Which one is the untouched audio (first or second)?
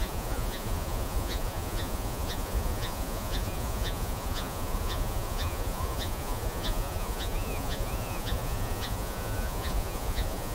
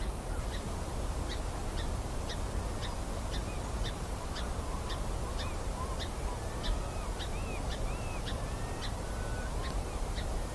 second